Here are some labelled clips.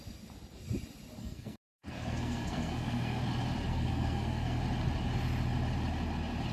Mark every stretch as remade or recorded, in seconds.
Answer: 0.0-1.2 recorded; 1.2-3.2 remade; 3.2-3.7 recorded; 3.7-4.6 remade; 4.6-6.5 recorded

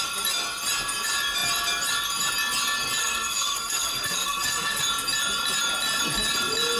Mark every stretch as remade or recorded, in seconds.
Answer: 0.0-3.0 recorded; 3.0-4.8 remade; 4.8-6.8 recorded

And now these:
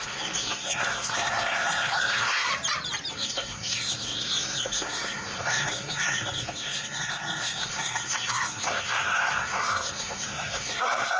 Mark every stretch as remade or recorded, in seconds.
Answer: 0.0-2.5 remade; 2.5-3.1 recorded; 3.1-11.2 remade

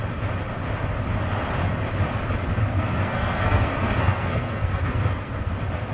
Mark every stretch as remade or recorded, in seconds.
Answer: 0.0-2.6 recorded; 2.6-5.5 remade; 5.5-5.9 recorded